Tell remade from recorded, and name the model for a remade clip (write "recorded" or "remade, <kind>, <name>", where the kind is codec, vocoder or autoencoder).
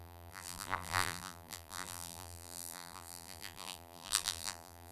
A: remade, vocoder, BigVGAN v2